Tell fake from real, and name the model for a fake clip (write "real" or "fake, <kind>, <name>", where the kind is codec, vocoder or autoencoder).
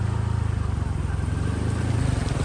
real